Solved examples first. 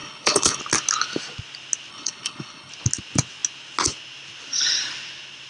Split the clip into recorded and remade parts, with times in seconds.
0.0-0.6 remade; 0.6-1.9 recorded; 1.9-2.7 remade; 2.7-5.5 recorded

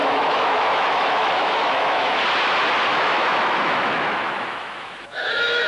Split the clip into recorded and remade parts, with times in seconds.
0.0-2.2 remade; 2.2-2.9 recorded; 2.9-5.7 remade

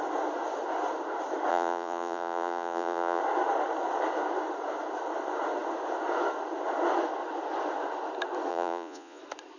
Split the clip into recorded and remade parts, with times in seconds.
0.0-1.5 recorded; 1.5-3.2 remade; 3.2-8.5 recorded; 8.5-9.2 remade; 9.2-9.6 recorded

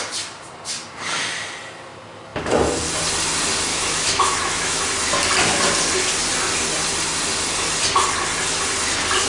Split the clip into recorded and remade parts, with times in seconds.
0.0-3.7 recorded; 3.7-4.8 remade; 4.8-9.3 recorded

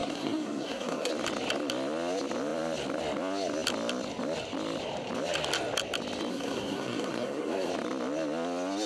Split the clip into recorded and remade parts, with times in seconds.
0.0-1.1 remade; 1.1-6.3 recorded; 6.3-7.7 remade; 7.7-8.9 recorded

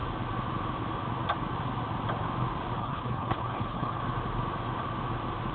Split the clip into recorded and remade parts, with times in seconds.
0.0-2.8 recorded; 2.8-4.0 remade; 4.0-5.5 recorded

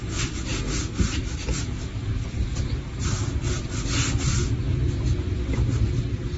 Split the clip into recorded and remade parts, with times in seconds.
0.0-6.4 recorded